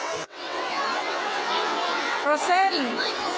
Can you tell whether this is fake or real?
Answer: fake